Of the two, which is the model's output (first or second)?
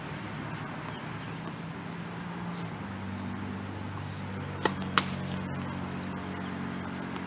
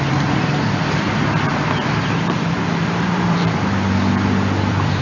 second